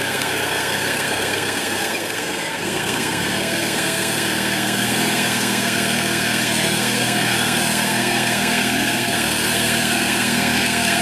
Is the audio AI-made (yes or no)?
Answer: yes